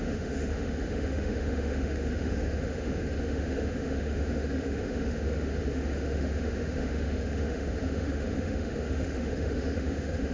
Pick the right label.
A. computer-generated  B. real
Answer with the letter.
A